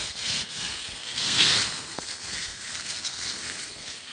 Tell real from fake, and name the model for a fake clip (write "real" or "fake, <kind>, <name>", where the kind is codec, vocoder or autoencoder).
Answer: fake, codec, SNAC